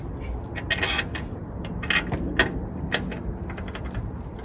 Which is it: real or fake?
real